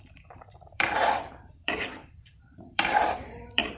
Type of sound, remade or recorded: remade